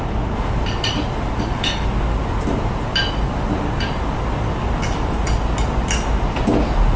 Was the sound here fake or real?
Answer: real